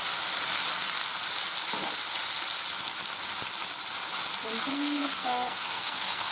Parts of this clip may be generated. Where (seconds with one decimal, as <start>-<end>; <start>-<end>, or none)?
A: 4.7-6.3